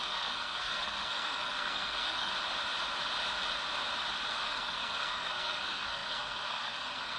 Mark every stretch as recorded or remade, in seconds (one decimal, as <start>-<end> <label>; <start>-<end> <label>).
0.0-2.3 remade; 2.3-4.3 recorded; 4.3-7.2 remade

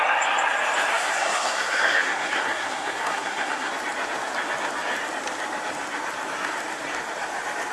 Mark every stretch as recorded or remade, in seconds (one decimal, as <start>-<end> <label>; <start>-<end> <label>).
0.0-0.9 recorded; 0.9-3.7 remade; 3.7-7.7 recorded

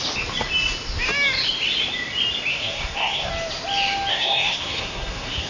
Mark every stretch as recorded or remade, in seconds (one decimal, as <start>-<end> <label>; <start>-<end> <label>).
0.0-2.5 recorded; 2.5-3.3 remade; 3.3-4.1 recorded; 4.1-5.5 remade

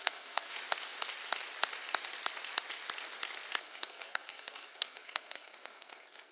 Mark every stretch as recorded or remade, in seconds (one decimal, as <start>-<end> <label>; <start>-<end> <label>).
0.0-0.5 remade; 0.5-3.6 recorded; 3.6-6.3 remade